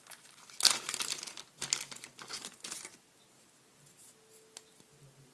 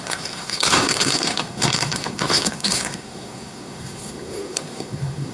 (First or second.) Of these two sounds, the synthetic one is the second